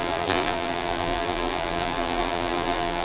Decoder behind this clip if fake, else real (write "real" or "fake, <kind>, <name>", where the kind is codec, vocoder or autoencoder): fake, vocoder, BigVGAN v2